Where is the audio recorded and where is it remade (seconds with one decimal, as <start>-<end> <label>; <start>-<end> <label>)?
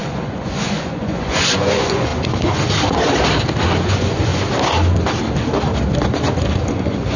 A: 0.0-2.1 remade; 2.1-3.9 recorded; 3.9-4.3 remade; 4.3-6.7 recorded; 6.7-7.2 remade